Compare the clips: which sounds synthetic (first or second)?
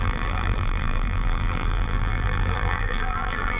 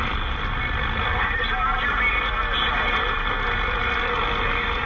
first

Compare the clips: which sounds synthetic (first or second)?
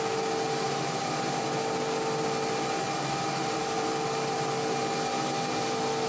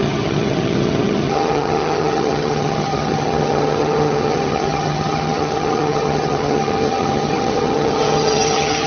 second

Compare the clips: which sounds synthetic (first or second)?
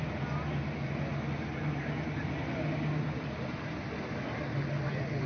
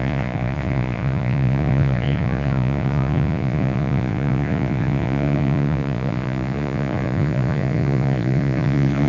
second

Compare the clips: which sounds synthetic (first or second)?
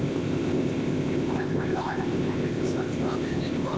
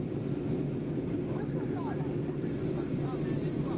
first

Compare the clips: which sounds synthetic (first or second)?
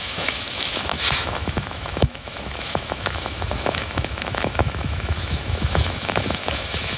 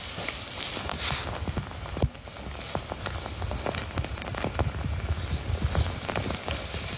first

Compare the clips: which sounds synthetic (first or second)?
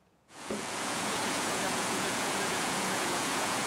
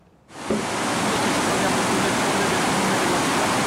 first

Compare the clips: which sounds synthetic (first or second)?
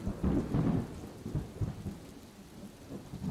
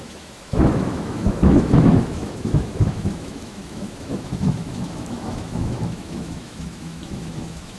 second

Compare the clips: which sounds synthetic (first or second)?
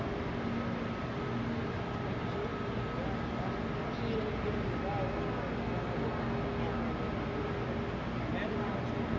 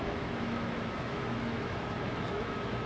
second